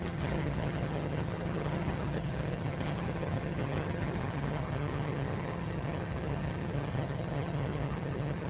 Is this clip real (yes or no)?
no